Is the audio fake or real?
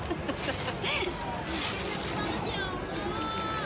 real